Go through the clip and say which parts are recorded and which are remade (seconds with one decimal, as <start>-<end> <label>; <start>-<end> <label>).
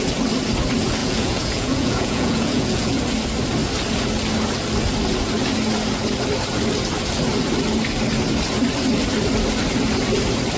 0.0-1.0 recorded; 1.0-3.0 remade; 3.0-10.6 recorded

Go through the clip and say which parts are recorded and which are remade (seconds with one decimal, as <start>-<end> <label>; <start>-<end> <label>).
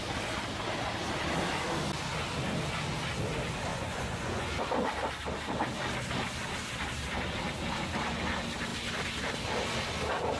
0.0-3.7 recorded; 3.7-4.5 remade; 4.5-10.4 recorded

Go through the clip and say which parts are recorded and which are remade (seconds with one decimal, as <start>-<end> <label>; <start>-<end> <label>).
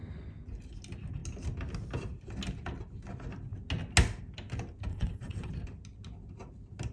0.0-4.9 recorded; 4.9-5.5 remade; 5.5-6.9 recorded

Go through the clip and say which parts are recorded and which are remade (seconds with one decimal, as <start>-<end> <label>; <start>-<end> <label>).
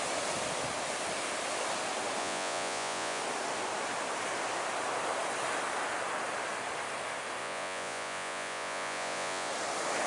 0.0-2.2 recorded; 2.2-3.2 remade; 3.2-7.4 recorded; 7.4-9.5 remade; 9.5-10.1 recorded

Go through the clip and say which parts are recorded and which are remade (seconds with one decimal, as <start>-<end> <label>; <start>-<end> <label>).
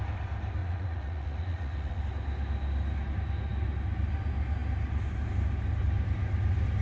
0.0-0.6 recorded; 0.6-2.0 remade; 2.0-6.8 recorded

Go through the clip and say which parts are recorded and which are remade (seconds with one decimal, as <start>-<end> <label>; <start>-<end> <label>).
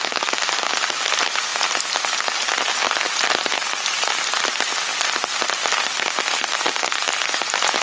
0.0-7.8 recorded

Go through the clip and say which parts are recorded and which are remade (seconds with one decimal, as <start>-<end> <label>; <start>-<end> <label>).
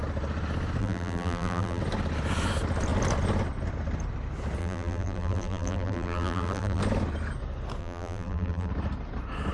0.0-0.8 recorded; 0.8-1.8 remade; 1.8-4.6 recorded; 4.6-6.8 remade; 6.8-7.8 recorded; 7.8-8.7 remade; 8.7-9.5 recorded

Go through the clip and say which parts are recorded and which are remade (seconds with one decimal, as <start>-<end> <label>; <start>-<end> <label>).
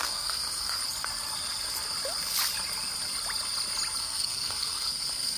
0.0-0.8 remade; 0.8-4.0 recorded; 4.0-5.4 remade